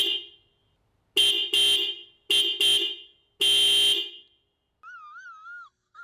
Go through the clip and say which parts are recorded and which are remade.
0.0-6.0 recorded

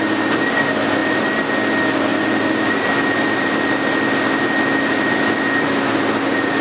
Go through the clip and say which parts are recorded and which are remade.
0.0-6.6 recorded

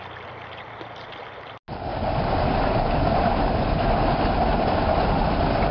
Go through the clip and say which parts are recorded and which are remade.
0.0-5.7 recorded